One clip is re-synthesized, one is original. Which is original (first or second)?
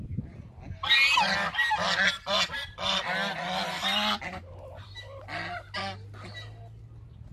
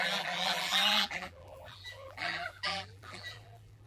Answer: first